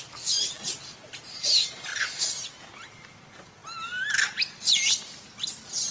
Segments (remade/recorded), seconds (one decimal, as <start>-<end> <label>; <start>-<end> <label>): 0.0-5.9 recorded